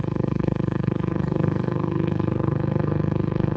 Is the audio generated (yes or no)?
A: yes